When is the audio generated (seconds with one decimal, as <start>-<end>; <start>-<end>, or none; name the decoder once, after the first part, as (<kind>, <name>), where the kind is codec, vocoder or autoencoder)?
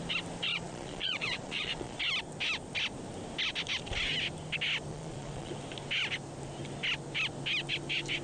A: 0.5-2.0 (vocoder, Vocos); 4.9-5.5